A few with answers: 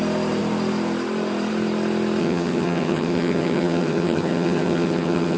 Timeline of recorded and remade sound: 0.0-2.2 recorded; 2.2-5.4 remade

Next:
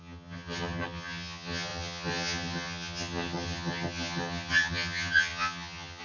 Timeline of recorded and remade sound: 0.0-6.0 remade

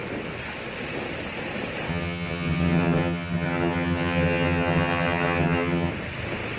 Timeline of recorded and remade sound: 0.0-1.9 recorded; 1.9-5.9 remade; 5.9-6.6 recorded

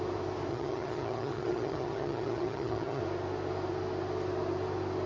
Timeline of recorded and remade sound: 0.0-0.5 recorded; 0.5-3.0 remade; 3.0-5.1 recorded

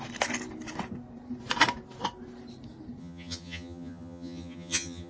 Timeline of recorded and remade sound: 0.0-3.0 recorded; 3.0-5.1 remade

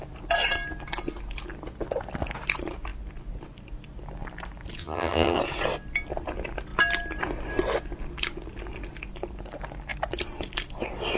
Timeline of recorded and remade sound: 0.0-4.8 recorded; 4.8-5.4 remade; 5.4-11.2 recorded

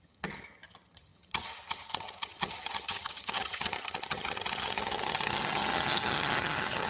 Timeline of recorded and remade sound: 0.0-6.9 remade